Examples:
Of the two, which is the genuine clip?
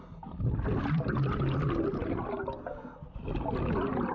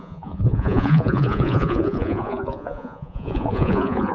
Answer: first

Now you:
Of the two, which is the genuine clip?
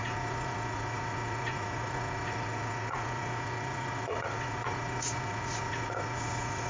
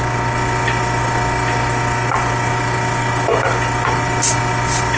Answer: second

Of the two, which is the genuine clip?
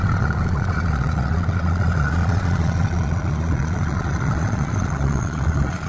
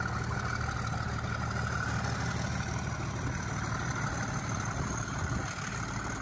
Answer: second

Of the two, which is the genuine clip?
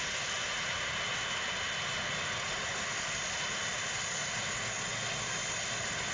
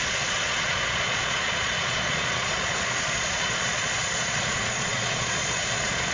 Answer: first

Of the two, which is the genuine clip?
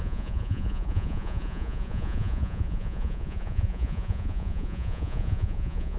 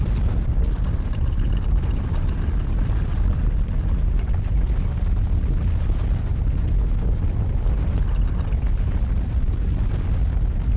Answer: second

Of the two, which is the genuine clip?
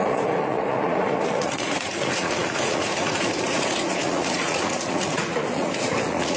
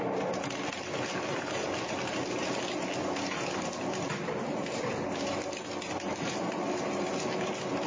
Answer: second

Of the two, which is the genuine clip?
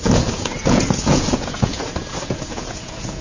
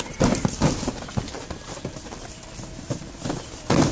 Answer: second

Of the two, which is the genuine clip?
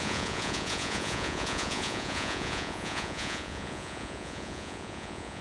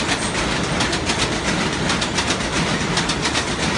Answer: second